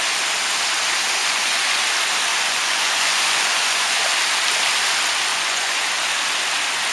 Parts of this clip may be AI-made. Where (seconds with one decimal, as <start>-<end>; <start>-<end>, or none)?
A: 1.2-1.8; 2.3-4.0; 5.3-5.9